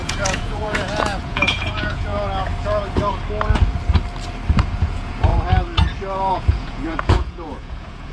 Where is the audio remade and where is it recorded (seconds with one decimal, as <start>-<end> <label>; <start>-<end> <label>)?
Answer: 0.0-2.1 remade; 2.1-4.6 recorded; 4.6-5.3 remade; 5.3-6.3 recorded; 6.3-8.1 remade